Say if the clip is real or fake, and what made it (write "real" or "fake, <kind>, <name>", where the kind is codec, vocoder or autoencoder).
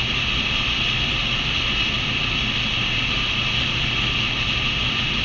real